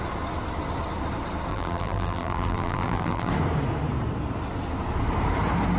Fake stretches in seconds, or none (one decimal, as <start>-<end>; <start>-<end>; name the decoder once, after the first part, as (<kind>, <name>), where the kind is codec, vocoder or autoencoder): 1.5-3.3 (vocoder, BigVGAN v2)